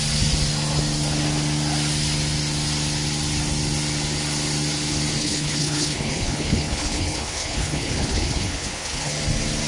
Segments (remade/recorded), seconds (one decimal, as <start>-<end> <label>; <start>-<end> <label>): 0.0-5.2 recorded; 5.2-9.1 remade; 9.1-9.7 recorded